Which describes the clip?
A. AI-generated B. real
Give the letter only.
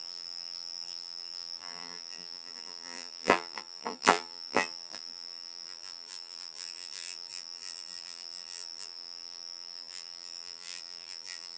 A